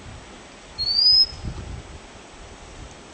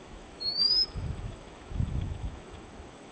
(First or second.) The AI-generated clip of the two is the second